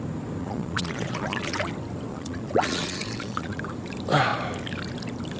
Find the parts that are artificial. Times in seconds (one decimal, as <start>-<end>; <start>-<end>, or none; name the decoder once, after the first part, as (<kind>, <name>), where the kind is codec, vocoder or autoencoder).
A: 0.4-1.7 (vocoder, Vocos); 2.1-3.6